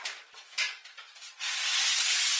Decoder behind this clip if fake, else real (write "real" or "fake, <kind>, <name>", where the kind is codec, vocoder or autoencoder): real